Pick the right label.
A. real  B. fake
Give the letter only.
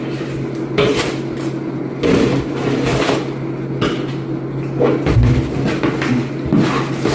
A